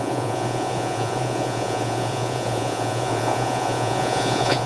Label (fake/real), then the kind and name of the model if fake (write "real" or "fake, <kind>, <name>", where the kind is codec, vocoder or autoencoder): fake, vocoder, Vocos